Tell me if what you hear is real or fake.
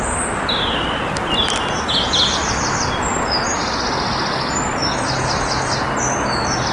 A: real